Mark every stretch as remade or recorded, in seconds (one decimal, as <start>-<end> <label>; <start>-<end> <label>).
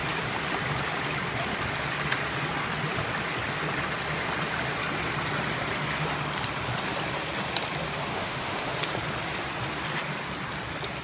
0.0-8.1 recorded; 8.1-8.7 remade; 8.7-11.0 recorded